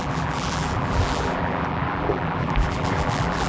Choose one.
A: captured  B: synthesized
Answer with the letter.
B